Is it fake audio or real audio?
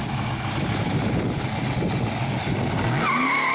real